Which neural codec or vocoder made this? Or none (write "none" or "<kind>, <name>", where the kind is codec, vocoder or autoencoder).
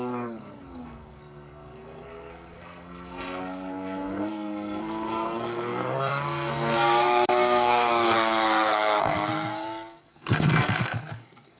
codec, SNAC